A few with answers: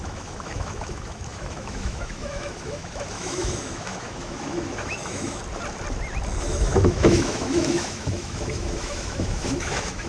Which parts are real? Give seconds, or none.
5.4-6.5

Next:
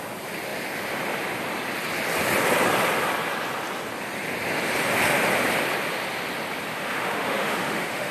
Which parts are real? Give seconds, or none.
0.0-6.7

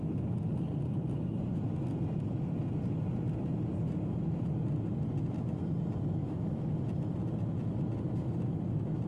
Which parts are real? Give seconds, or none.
0.0-6.2; 6.7-9.1